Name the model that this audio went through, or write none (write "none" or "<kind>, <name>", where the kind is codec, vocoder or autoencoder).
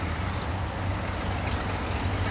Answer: none